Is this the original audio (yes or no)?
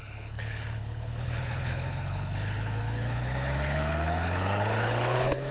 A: no